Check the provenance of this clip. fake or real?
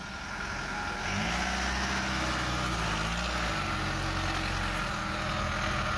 real